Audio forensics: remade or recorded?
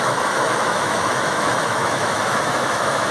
remade